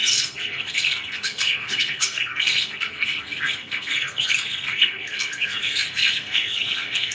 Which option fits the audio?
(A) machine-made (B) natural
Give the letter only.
A